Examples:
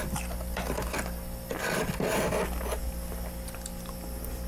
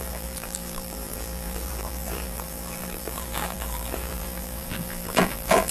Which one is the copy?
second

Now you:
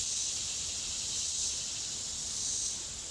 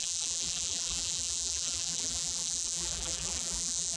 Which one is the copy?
second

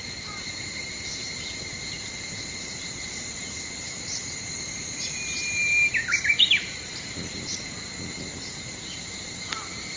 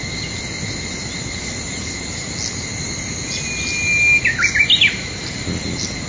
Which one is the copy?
first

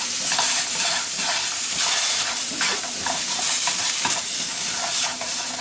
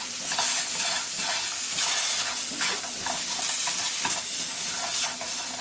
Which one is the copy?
first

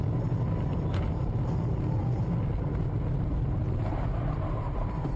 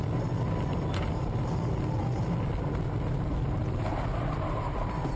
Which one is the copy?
first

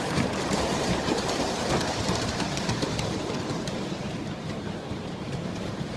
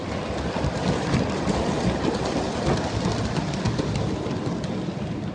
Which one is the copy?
first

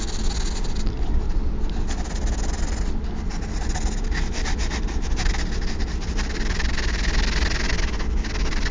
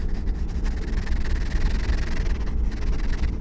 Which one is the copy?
second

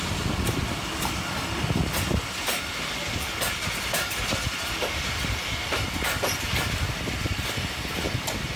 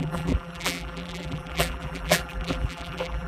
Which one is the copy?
second